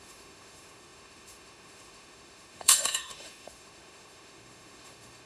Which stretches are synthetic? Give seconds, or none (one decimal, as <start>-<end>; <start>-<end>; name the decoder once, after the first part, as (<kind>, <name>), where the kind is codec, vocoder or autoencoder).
0.0-5.3 (autoencoder, DAC-VAE)